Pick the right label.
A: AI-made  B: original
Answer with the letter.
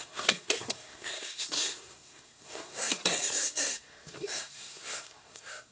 A